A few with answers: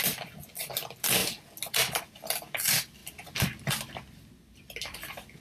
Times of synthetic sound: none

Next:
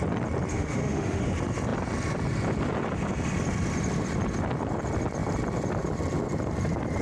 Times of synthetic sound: 0.5-1.2